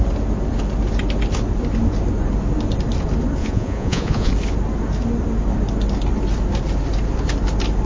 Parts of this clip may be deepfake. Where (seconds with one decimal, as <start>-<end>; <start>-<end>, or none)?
3.4-4.3